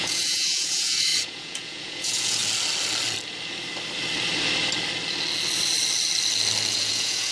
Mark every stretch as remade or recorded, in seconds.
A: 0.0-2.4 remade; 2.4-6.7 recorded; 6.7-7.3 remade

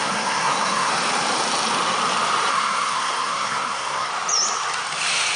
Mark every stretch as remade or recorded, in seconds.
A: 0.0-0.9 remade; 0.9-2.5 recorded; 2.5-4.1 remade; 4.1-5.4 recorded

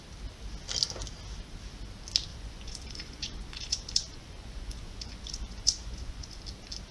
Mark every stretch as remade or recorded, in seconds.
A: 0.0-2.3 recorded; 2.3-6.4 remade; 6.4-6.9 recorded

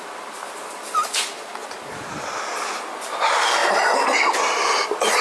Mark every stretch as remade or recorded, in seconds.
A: 0.0-5.2 recorded

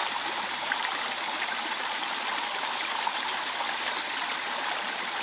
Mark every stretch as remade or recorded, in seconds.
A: 0.0-2.1 remade; 2.1-5.2 recorded